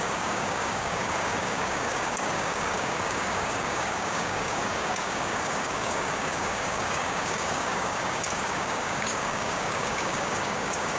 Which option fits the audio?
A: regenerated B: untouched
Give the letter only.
A